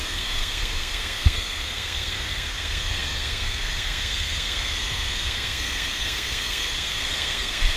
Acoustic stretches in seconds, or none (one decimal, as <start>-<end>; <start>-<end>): none